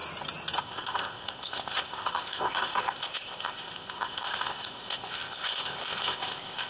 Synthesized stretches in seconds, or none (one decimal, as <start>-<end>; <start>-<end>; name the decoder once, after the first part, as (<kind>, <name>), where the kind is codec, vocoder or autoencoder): 0.6-6.7 (codec, ZipCodec)